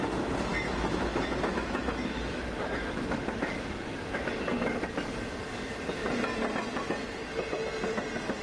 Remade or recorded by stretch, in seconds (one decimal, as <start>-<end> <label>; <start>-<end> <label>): 0.0-0.5 recorded; 0.5-4.2 remade; 4.2-8.4 recorded